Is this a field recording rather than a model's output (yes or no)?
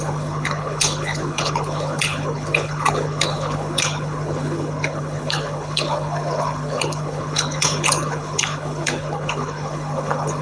no